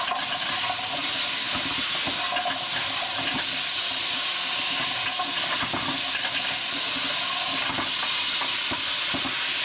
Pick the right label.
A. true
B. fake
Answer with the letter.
A